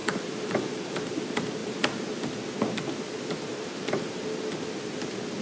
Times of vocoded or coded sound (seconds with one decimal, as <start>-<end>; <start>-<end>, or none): 0.0-1.1; 1.6-2.2; 3.5-4.2

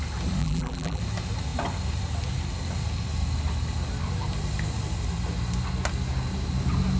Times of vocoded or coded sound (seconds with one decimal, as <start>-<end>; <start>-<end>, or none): 0.4-1.0

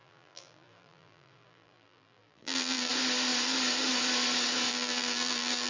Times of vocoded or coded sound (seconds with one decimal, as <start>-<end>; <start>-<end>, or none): 0.0-2.9; 4.7-5.7

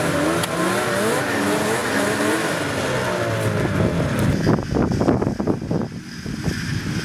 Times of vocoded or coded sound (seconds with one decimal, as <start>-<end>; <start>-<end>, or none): none

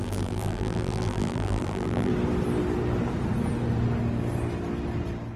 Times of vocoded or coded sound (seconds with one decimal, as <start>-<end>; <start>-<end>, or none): 0.0-2.1

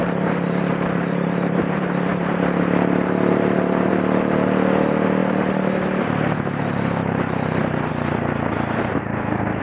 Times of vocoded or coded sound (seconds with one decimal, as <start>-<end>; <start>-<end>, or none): 0.0-3.9; 5.2-7.9